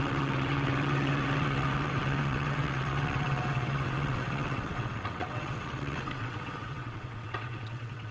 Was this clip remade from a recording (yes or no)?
yes